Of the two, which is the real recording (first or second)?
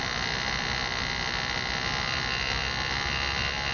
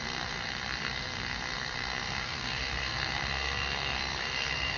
first